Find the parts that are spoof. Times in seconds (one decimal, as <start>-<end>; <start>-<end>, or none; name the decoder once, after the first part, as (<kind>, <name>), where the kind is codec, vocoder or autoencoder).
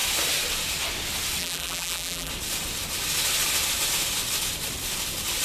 1.4-2.3 (vocoder, BigVGAN v2)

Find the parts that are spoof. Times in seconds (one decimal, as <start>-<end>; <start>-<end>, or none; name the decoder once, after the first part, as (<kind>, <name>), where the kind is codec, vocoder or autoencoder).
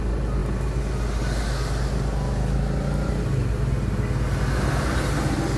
none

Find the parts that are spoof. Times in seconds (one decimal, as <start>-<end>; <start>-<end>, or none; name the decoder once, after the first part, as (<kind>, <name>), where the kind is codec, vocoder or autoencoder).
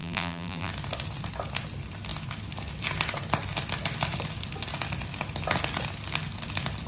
0.0-0.7 (vocoder, BigVGAN v2)